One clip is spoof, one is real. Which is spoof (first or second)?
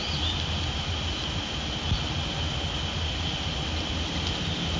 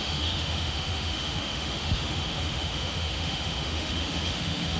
second